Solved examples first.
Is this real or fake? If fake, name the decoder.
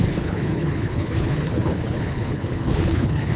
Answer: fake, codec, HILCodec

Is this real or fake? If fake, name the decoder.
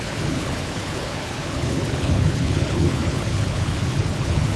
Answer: fake, codec, HILCodec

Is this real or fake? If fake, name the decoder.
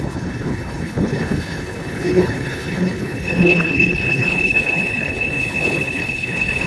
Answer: fake, codec, HILCodec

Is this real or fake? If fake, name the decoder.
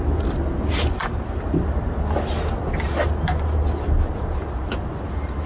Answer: real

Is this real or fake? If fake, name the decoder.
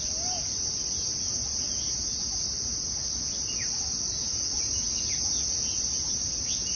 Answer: real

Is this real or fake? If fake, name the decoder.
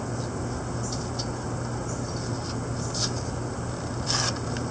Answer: real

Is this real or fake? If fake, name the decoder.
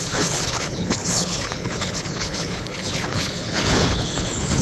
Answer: fake, codec, HILCodec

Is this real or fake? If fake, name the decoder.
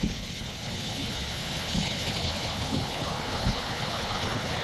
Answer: fake, codec, HILCodec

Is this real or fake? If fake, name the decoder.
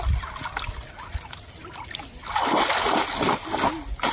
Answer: real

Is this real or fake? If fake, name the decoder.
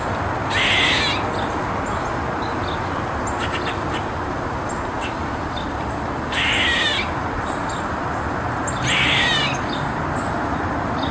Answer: real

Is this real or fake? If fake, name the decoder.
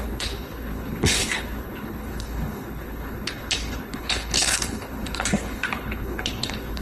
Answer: fake, codec, HILCodec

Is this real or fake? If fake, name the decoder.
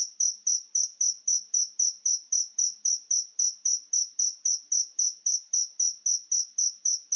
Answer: real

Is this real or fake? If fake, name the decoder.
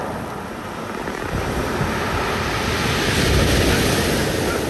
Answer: real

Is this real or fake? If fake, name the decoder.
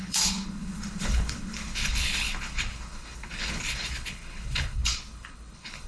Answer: fake, codec, HILCodec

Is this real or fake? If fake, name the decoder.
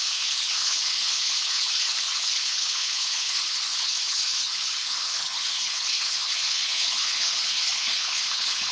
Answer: fake, codec, HILCodec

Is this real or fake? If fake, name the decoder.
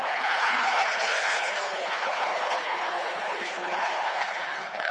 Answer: fake, codec, HILCodec